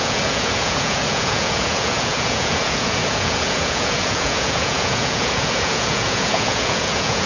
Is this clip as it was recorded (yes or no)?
no